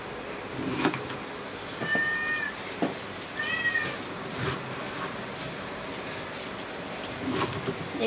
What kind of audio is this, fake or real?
real